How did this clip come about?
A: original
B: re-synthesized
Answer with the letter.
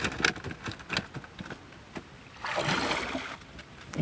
A